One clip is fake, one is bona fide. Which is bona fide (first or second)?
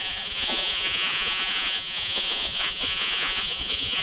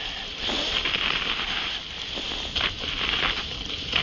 second